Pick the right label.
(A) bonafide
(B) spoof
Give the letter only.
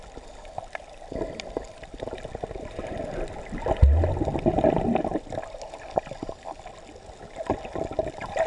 A